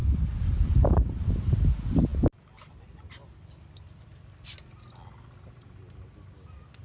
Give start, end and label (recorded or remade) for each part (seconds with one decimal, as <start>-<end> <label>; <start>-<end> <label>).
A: 0.0-1.3 remade; 1.3-6.8 recorded